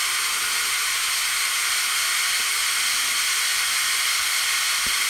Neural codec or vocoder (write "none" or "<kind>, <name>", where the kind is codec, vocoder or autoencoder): none